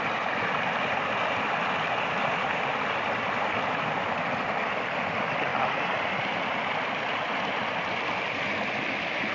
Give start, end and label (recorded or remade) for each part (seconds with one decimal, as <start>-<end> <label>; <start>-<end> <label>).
0.0-9.3 recorded